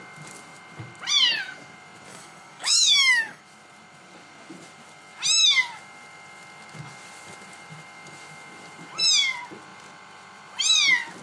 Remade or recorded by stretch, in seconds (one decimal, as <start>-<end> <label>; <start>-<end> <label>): 0.0-2.1 recorded; 2.1-3.4 remade; 3.4-11.2 recorded